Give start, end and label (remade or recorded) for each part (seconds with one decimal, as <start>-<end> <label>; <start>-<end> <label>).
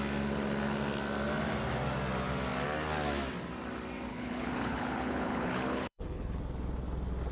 0.0-4.1 recorded; 4.1-6.4 remade; 6.4-7.3 recorded